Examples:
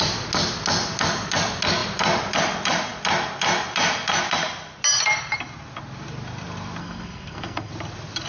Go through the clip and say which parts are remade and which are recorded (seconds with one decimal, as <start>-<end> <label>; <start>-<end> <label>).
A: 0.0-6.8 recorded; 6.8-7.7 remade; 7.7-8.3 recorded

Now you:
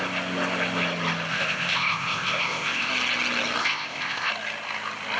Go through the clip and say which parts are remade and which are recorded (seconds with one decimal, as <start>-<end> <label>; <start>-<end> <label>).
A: 0.0-1.3 recorded; 1.3-2.9 remade; 2.9-3.6 recorded; 3.6-4.3 remade; 4.3-5.2 recorded

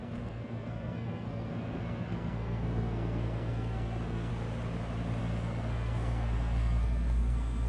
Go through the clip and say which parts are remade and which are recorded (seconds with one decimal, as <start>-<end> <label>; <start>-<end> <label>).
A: 0.0-4.3 remade; 4.3-5.2 recorded; 5.2-7.7 remade

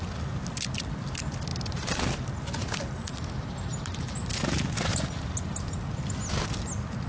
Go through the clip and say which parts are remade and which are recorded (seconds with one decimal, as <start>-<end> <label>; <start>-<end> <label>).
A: 0.0-1.5 recorded; 1.5-2.8 remade; 2.8-4.9 recorded; 4.9-5.6 remade; 5.6-7.1 recorded

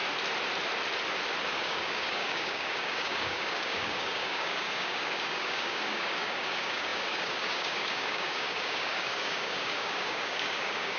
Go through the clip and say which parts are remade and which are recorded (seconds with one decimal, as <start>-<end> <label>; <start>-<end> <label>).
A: 0.0-1.5 recorded; 1.5-11.0 remade